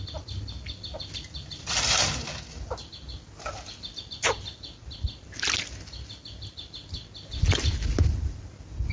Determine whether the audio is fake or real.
real